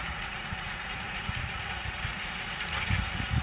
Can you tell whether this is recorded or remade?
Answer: remade